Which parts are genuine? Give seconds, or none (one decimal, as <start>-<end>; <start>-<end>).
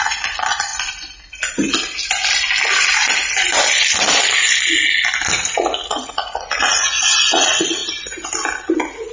0.7-5.3; 7.8-8.6